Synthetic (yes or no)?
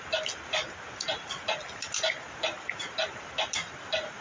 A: no